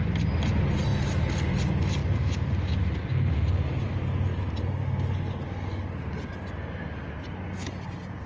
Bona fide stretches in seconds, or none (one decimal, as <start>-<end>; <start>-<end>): 0.0-8.3